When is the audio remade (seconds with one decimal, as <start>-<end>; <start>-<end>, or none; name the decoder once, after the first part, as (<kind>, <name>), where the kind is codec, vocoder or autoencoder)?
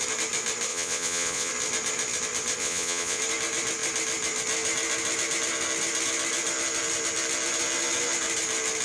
0.7-1.5 (vocoder, Vocos); 2.6-3.2